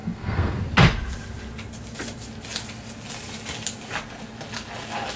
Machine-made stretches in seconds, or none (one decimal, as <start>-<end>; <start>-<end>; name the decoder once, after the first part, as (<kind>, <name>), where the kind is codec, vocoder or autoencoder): 0.0-0.6 (codec, SNAC)